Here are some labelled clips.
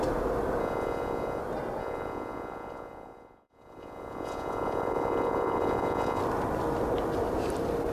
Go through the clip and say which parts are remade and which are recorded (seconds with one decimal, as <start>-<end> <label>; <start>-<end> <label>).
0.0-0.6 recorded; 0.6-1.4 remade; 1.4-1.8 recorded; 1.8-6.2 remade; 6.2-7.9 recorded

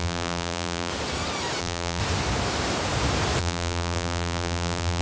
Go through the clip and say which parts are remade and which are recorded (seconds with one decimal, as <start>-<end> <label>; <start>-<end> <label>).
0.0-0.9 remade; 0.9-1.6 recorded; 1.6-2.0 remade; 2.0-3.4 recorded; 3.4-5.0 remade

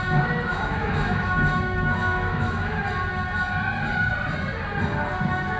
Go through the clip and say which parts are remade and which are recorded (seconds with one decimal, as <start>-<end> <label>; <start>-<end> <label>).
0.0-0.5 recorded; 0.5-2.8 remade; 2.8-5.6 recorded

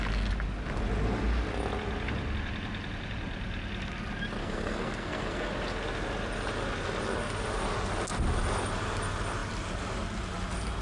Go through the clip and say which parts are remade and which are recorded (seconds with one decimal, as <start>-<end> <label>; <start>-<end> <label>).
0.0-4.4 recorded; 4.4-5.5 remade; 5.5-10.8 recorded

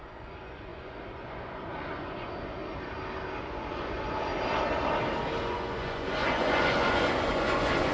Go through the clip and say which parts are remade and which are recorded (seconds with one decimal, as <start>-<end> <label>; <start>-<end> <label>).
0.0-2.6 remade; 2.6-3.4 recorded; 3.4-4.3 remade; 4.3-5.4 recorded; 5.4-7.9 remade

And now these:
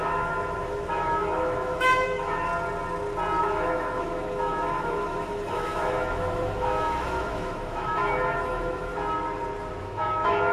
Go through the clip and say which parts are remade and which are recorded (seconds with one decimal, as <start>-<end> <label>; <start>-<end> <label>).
0.0-2.5 remade; 2.5-3.4 recorded; 3.4-8.9 remade; 8.9-9.8 recorded; 9.8-10.5 remade

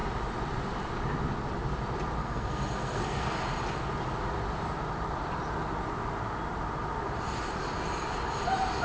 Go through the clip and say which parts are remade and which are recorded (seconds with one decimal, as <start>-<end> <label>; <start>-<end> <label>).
0.0-2.2 recorded; 2.2-3.3 remade; 3.3-8.8 recorded